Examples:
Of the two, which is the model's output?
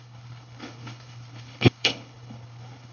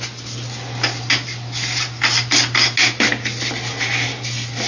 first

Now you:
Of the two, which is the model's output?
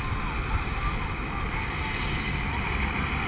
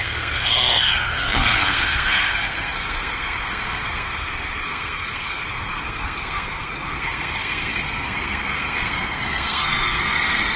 second